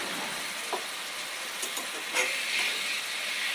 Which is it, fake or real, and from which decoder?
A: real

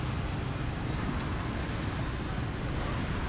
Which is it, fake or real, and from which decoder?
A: real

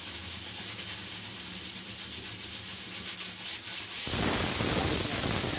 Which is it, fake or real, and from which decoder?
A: real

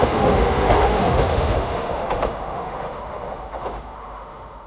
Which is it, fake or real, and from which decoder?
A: fake, autoencoder, DAC-VAE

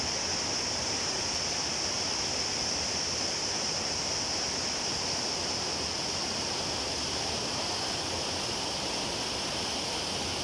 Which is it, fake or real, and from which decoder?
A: real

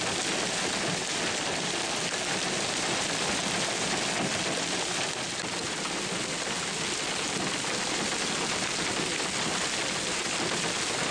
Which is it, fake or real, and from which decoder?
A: real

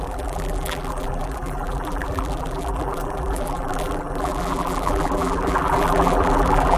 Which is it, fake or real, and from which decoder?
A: fake, vocoder, BigVGAN v2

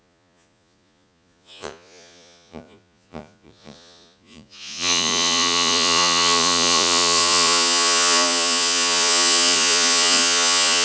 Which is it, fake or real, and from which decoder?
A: fake, vocoder, Vocos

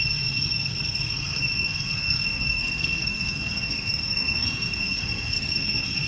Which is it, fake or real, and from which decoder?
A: fake, codec, SNAC